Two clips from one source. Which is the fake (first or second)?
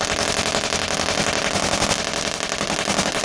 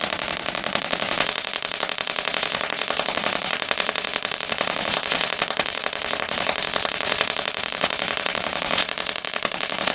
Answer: second